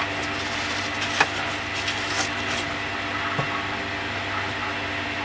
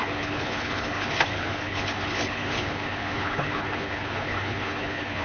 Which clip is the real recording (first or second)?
first